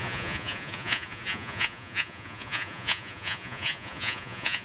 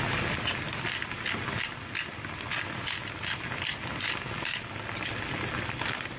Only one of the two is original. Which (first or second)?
second